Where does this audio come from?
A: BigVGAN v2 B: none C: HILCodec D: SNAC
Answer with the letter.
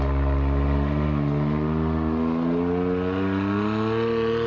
B